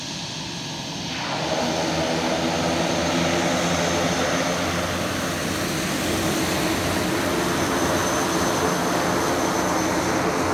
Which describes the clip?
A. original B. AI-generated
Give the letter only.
A